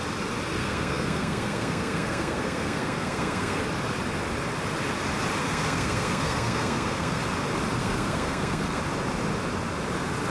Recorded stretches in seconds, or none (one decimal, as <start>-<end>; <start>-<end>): 0.0-0.6; 3.6-5.4; 7.2-7.8; 8.8-10.3